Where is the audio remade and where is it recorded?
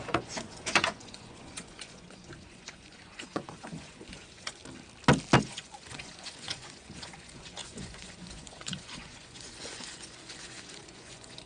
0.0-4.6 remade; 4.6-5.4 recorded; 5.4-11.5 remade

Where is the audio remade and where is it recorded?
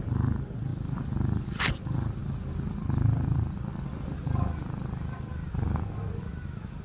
0.0-6.8 recorded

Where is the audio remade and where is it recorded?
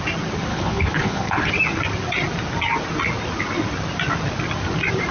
0.0-0.5 recorded; 0.5-1.5 remade; 1.5-5.1 recorded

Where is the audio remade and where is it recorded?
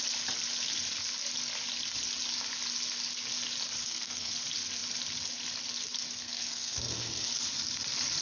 0.0-3.8 recorded; 3.8-4.3 remade; 4.3-6.2 recorded; 6.2-7.3 remade; 7.3-8.2 recorded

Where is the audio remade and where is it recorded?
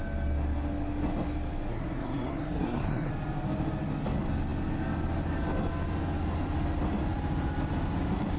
0.0-1.7 recorded; 1.7-3.1 remade; 3.1-8.4 recorded